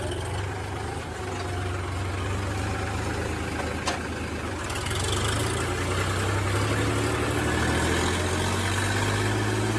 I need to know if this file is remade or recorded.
recorded